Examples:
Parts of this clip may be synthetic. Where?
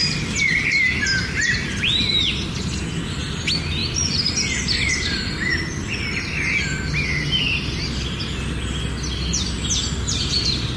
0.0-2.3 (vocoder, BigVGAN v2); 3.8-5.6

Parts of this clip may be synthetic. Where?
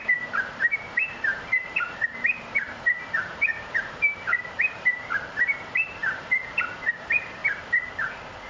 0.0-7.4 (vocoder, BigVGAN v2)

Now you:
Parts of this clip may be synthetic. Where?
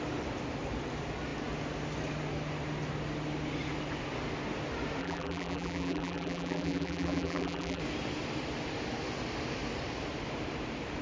5.0-7.8 (vocoder, BigVGAN v2)